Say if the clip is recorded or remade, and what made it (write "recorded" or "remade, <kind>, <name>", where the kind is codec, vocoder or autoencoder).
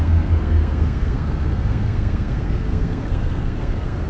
remade, codec, SNAC